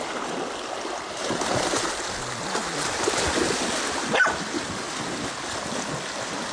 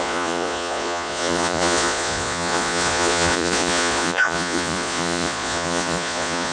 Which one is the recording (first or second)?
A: first